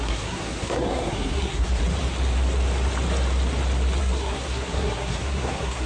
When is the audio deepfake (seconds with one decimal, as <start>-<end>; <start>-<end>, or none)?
0.0-1.8; 4.0-5.9